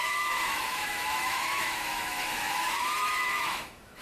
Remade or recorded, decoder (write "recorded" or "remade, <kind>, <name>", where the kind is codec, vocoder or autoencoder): remade, autoencoder, DAC-VAE